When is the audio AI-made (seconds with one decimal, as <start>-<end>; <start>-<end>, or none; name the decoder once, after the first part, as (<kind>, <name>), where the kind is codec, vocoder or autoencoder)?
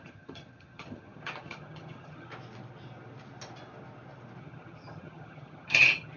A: 0.0-2.3 (vocoder, HiFi-GAN); 4.4-6.2